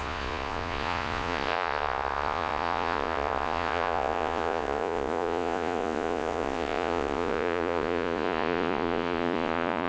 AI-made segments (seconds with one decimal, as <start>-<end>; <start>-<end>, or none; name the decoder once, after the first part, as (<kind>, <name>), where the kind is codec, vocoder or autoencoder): 0.0-9.9 (vocoder, Vocos)